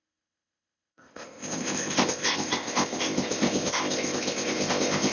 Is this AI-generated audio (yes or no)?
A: yes